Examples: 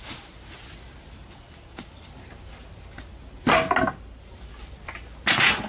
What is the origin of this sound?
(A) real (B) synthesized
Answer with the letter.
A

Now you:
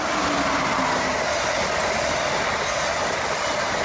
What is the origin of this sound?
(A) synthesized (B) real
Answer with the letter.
B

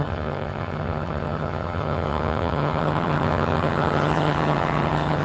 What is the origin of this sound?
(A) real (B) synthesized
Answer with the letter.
B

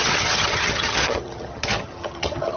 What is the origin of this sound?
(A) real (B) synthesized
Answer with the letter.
B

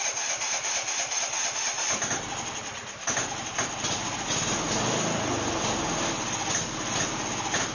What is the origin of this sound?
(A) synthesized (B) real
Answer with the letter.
B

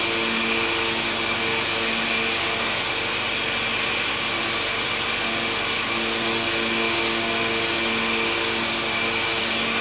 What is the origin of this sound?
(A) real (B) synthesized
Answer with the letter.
A